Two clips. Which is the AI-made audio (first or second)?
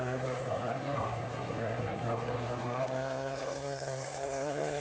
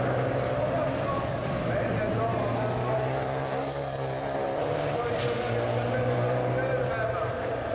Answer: first